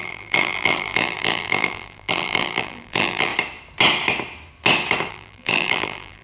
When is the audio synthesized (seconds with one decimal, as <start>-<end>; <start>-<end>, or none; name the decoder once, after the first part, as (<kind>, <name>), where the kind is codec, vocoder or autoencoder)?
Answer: 0.0-3.3 (vocoder, BigVGAN v2); 5.1-6.2